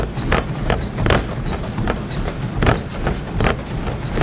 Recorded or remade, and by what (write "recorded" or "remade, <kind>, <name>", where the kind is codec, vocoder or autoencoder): recorded